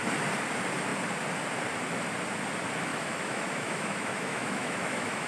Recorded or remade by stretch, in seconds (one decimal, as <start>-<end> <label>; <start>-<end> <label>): 0.0-2.9 recorded; 2.9-5.3 remade